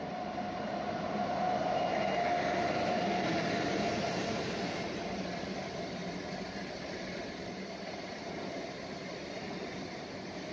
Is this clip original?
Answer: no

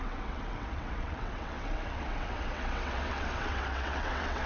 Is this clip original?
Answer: no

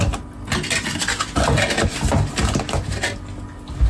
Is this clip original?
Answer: yes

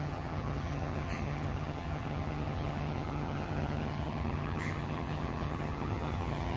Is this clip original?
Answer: no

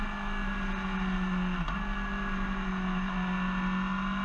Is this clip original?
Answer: yes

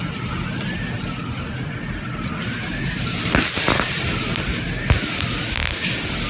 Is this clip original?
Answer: yes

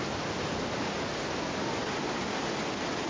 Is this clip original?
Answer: yes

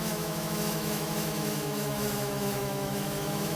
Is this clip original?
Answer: no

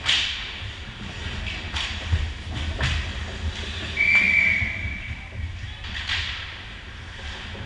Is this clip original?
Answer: yes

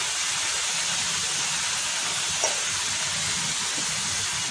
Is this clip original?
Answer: yes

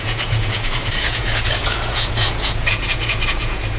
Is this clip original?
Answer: no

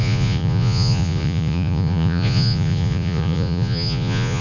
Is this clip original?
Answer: no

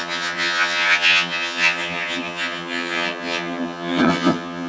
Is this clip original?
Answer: no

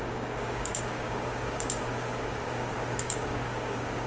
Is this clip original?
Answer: no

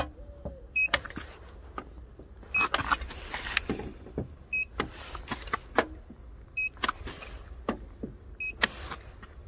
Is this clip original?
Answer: yes